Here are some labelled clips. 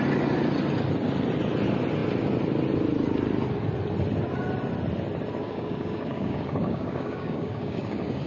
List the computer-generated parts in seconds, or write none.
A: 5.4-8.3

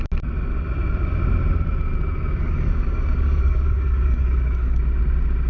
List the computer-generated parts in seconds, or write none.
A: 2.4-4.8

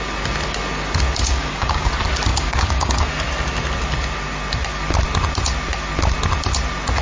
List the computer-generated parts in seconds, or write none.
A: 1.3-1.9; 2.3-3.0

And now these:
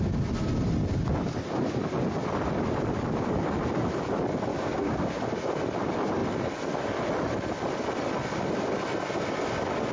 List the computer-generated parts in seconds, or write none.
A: 4.5-5.2

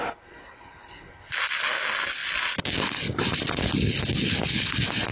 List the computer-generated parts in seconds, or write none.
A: none

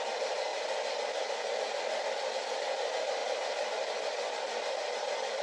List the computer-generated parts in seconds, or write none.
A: none

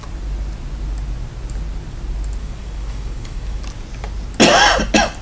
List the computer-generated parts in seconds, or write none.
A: 2.4-3.6

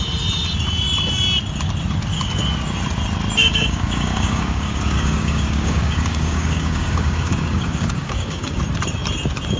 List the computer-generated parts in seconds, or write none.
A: 3.4-8.6